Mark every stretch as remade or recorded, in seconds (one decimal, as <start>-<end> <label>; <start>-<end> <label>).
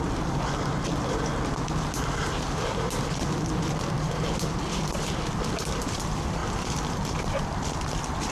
0.0-8.3 recorded